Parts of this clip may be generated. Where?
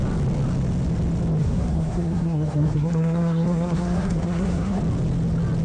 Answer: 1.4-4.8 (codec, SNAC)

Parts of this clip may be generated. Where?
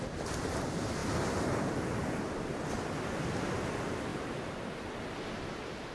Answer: 4.1-4.9 (vocoder, BigVGAN v2)